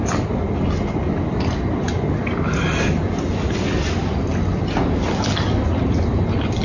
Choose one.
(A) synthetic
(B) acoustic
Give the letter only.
B